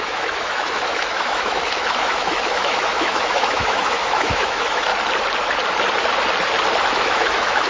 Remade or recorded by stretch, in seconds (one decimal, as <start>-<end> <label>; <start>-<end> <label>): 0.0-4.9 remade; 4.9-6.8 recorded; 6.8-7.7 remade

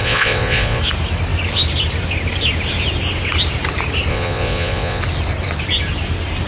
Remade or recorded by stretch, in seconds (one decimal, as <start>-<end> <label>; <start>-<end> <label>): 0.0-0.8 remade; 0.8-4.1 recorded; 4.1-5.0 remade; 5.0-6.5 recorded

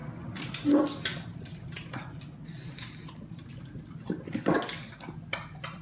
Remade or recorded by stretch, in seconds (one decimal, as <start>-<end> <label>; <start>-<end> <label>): 0.0-5.8 recorded

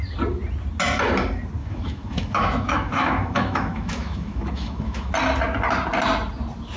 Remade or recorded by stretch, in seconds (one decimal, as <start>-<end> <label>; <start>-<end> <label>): 0.0-1.6 recorded; 1.6-5.1 remade; 5.1-6.8 recorded